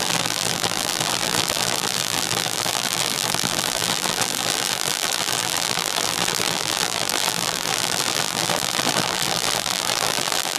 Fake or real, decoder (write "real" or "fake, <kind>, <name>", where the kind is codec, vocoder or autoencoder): fake, vocoder, BigVGAN v2